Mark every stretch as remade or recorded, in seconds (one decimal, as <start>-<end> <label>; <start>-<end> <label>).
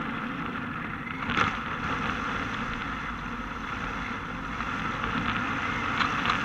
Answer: 0.0-6.4 recorded